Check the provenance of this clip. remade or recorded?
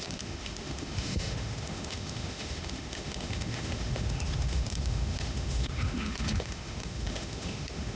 remade